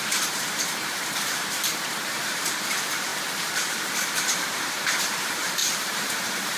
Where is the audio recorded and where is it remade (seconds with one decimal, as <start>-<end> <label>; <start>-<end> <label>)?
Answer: 0.0-6.6 remade